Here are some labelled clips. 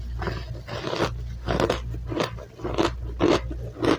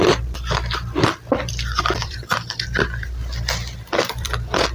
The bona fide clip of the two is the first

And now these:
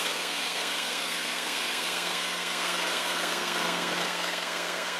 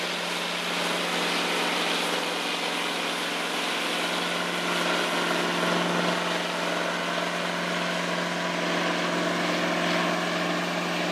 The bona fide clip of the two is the second